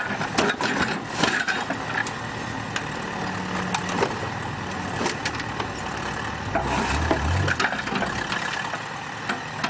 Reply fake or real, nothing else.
real